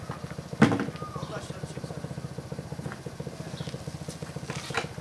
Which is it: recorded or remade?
recorded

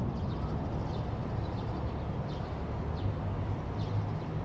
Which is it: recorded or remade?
recorded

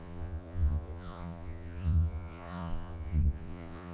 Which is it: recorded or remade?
remade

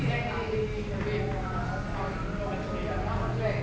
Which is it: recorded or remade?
recorded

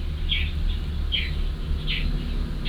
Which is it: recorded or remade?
recorded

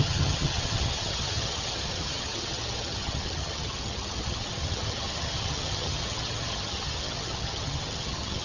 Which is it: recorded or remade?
remade